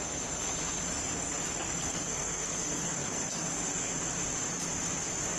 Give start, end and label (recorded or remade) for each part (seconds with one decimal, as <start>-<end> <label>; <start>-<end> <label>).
0.0-1.9 recorded; 1.9-3.9 remade; 3.9-5.4 recorded